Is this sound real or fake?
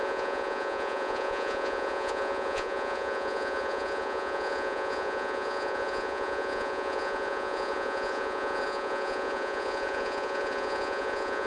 fake